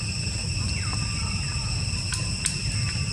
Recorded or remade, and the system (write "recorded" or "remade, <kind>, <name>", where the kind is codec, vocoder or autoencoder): remade, vocoder, BigVGAN v2